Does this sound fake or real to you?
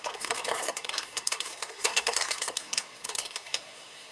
fake